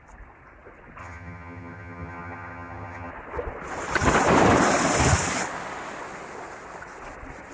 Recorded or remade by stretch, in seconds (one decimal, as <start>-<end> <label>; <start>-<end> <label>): 0.0-1.0 recorded; 1.0-3.1 remade; 3.1-7.5 recorded